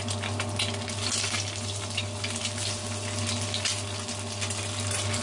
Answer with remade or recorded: recorded